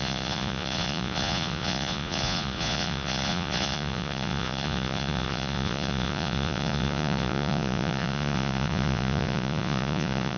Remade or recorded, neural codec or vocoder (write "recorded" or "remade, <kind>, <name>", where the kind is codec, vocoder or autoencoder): remade, vocoder, Vocos